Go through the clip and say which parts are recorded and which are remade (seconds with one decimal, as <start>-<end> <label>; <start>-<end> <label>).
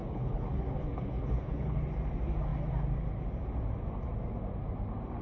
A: 0.0-1.8 remade; 1.8-5.2 recorded